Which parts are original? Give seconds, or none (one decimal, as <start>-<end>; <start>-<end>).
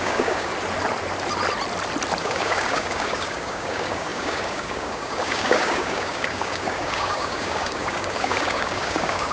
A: 0.5-2.2